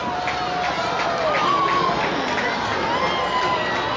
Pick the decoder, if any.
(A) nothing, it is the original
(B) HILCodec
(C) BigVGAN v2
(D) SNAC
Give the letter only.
A